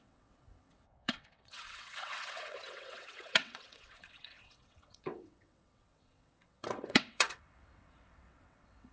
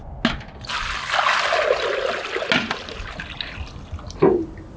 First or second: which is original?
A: second